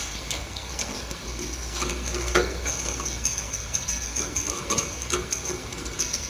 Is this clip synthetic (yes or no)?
yes